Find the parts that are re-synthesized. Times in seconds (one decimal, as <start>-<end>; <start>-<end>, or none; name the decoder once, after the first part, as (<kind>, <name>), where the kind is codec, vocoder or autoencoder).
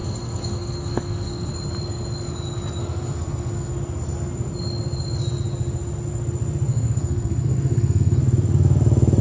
0.0-1.5 (codec, SNAC); 2.8-3.7; 6.7-8.2